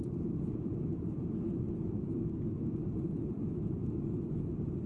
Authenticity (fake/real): real